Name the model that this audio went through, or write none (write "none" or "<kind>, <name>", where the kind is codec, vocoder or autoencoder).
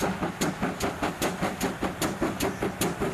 none